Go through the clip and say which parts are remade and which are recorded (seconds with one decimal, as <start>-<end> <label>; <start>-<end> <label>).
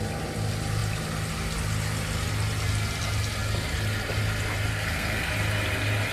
0.0-4.7 recorded; 4.7-5.3 remade; 5.3-6.1 recorded